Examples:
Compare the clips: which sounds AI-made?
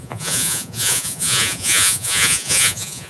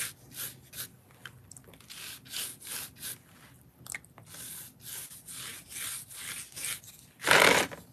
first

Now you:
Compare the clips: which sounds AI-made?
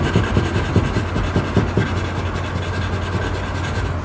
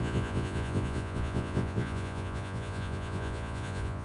second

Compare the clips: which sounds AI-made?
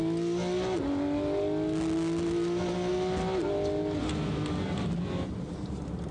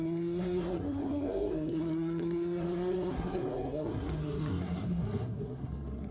second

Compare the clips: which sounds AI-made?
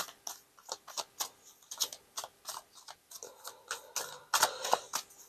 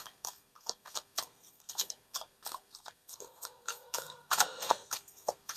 second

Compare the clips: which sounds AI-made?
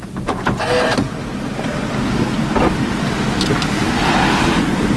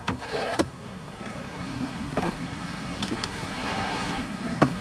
second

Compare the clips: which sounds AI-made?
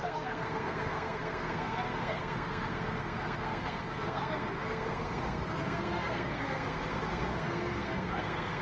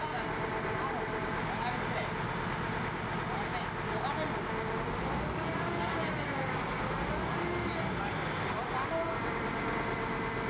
first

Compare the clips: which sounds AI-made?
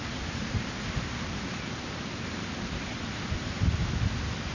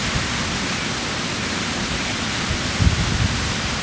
first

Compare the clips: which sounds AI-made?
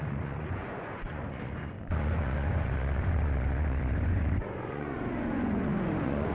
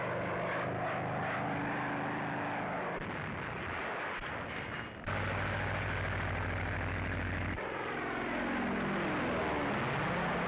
first